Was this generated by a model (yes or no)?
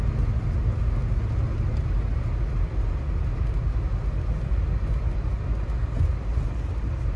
no